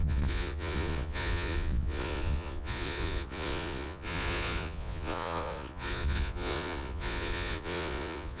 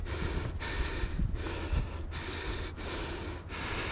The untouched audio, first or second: second